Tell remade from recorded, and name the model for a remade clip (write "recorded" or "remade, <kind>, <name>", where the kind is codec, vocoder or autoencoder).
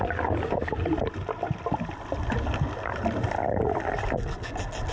recorded